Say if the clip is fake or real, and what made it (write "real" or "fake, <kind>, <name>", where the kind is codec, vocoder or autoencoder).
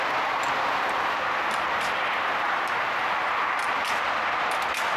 real